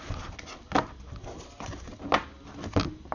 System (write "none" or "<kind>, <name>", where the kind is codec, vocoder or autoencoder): none